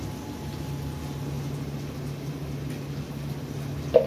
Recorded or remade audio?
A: recorded